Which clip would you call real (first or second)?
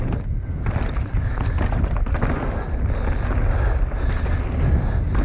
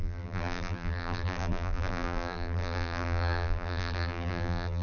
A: first